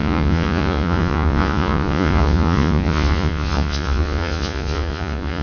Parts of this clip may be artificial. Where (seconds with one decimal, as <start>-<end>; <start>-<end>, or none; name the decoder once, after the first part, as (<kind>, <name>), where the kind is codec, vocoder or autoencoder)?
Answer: 0.0-5.4 (vocoder, Vocos)